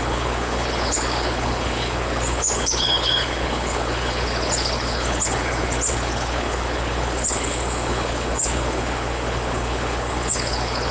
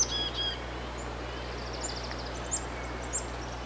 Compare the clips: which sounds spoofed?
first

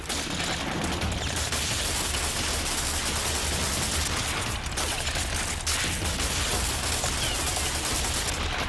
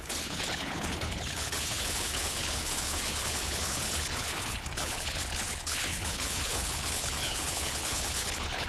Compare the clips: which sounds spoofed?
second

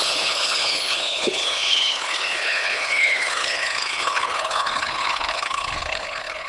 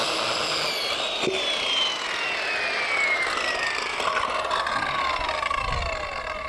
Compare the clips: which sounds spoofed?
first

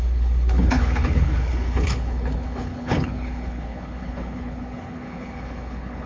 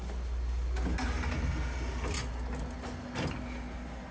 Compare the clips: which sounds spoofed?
first